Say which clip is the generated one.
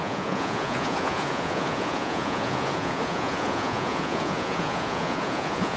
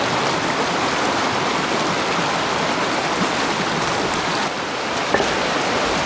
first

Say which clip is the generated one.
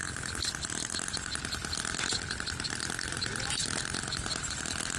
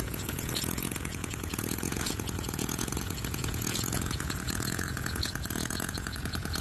second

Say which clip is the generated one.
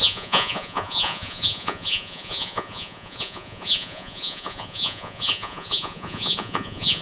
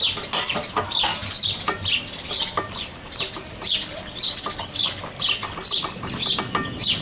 first